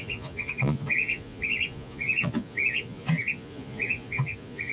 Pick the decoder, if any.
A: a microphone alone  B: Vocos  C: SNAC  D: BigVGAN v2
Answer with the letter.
B